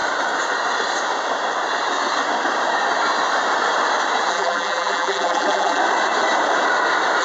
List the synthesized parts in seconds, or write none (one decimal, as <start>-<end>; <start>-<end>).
4.3-5.8